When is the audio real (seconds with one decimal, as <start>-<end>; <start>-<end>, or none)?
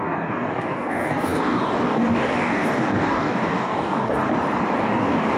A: 4.2-4.8